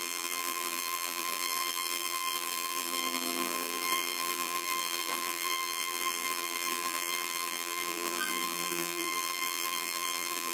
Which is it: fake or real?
fake